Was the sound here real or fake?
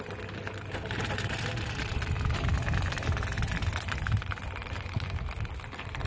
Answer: real